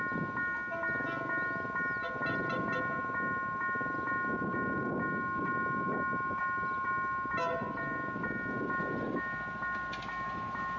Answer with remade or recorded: recorded